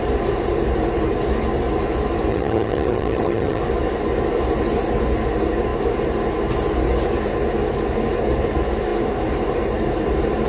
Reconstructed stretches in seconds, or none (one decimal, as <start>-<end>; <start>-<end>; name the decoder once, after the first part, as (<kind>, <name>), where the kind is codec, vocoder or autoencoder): 2.3-3.6 (vocoder, HiFi-GAN)